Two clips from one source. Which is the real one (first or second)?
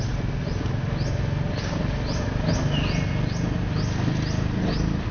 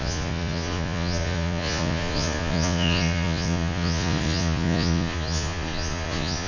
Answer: first